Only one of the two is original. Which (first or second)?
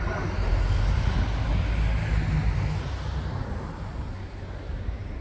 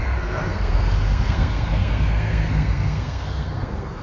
first